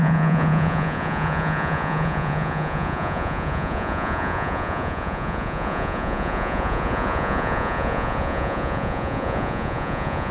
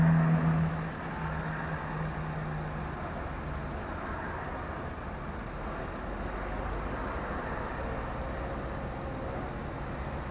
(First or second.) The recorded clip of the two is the second